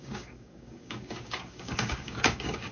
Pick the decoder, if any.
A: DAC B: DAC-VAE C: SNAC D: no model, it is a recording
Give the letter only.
A